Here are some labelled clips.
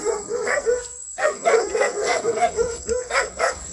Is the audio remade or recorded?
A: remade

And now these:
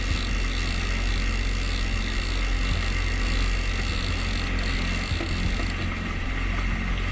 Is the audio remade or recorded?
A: recorded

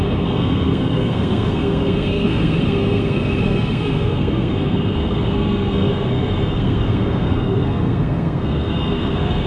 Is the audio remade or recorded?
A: remade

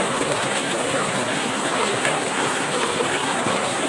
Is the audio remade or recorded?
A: remade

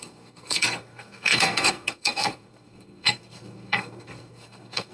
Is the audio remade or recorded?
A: remade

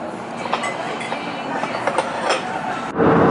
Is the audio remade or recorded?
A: recorded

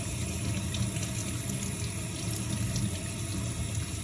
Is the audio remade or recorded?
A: recorded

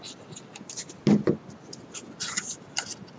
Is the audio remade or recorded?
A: recorded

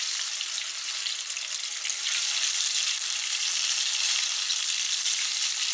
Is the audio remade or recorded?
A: recorded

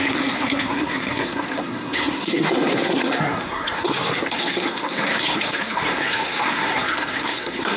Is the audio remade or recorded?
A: remade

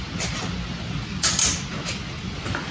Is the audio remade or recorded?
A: recorded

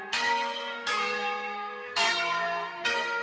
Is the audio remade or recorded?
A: remade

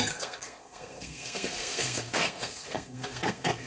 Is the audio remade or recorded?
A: remade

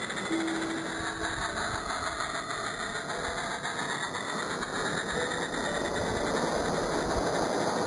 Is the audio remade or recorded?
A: recorded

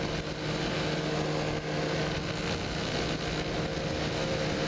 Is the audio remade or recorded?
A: recorded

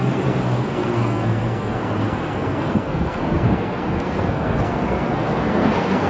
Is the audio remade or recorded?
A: remade